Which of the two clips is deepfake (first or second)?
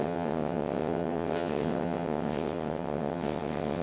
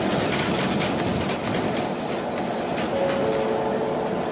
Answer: first